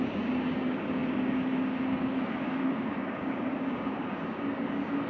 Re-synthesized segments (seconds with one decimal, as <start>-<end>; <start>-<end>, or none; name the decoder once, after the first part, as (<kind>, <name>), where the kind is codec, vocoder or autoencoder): 0.0-5.1 (codec, DAC)